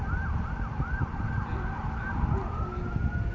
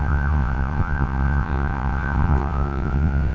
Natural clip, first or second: first